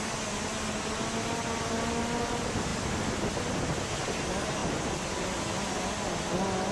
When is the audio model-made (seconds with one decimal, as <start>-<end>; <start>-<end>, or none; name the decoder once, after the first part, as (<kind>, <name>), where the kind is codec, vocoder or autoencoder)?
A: none